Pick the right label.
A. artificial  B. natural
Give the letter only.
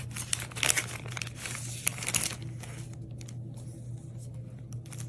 B